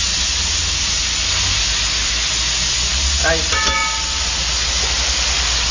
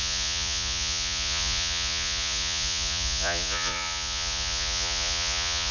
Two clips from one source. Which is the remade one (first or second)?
second